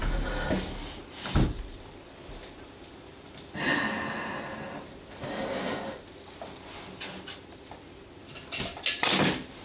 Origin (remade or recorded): recorded